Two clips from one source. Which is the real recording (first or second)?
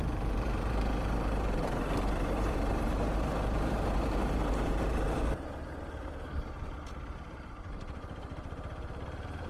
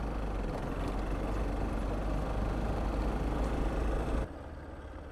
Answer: second